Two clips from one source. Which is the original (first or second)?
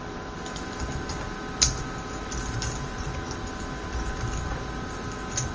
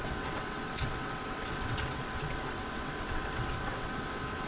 first